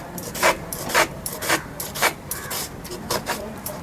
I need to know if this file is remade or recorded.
remade